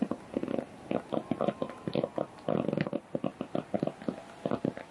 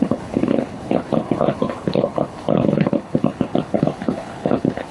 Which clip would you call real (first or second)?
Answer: first